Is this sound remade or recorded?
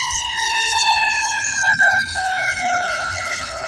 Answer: remade